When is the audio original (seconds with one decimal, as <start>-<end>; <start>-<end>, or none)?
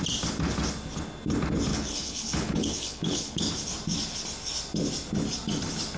0.0-1.7; 3.5-6.0